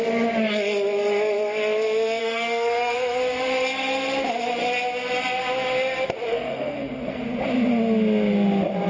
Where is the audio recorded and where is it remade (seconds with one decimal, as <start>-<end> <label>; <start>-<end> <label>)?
0.0-2.2 recorded; 2.2-3.2 remade; 3.2-6.3 recorded; 6.3-7.2 remade; 7.2-8.9 recorded